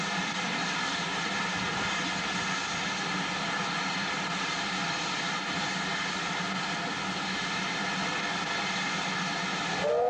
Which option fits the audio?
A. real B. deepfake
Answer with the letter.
A